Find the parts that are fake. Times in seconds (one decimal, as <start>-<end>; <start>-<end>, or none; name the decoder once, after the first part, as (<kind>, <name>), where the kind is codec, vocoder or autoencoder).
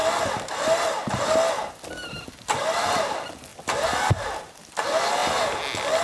none